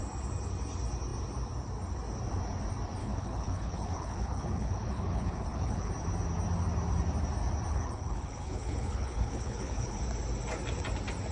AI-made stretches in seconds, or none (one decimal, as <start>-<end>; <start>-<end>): 3.0-5.9; 7.7-10.0